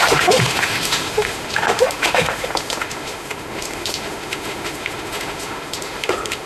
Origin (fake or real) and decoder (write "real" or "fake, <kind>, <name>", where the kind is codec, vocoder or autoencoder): fake, autoencoder, DAC-VAE